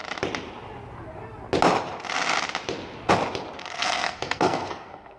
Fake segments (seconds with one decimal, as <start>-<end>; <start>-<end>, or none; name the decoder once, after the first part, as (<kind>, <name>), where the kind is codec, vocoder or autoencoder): 3.6-5.2 (codec, SNAC)